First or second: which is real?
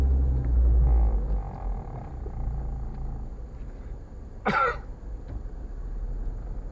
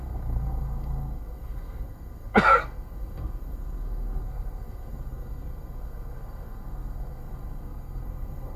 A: first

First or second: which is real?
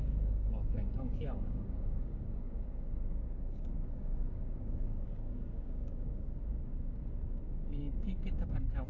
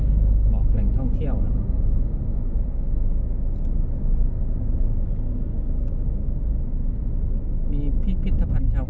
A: second